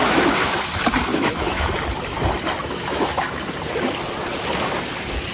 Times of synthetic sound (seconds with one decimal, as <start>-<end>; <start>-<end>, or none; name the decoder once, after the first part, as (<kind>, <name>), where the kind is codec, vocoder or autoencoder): 0.0-0.5 (autoencoder, DAC-VAE); 1.1-1.7; 2.6-3.3